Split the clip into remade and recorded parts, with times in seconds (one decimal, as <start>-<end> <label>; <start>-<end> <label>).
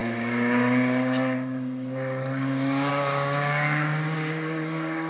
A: 0.0-5.1 remade